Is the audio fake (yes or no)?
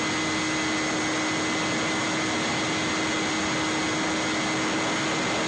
no